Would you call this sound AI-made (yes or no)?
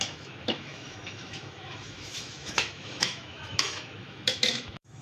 yes